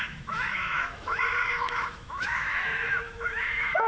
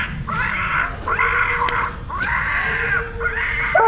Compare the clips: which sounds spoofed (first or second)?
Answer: first